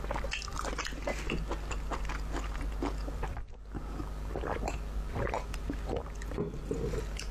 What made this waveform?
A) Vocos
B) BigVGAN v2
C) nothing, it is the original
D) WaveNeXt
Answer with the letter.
C